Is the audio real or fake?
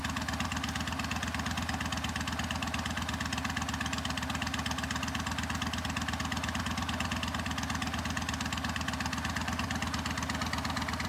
real